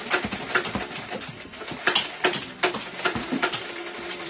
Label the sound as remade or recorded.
recorded